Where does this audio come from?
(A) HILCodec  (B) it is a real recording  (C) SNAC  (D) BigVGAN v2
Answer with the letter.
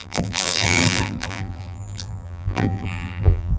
D